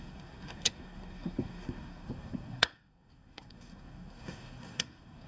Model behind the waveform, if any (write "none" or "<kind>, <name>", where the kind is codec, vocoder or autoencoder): codec, SNAC